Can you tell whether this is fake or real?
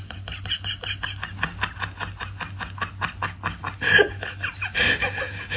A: real